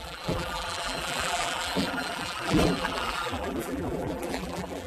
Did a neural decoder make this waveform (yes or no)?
yes